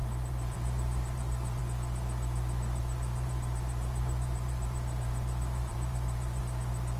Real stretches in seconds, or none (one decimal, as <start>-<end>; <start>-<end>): 1.6-2.8; 6.4-7.0